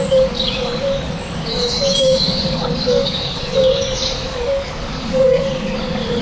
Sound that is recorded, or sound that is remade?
remade